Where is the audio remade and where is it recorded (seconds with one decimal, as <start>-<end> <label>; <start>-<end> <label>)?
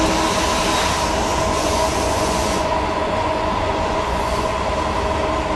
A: 0.0-1.3 recorded; 1.3-4.7 remade; 4.7-5.6 recorded